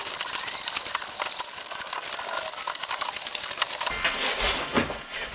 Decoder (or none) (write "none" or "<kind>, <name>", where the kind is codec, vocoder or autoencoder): none